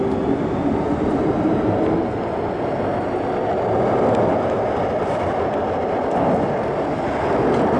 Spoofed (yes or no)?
no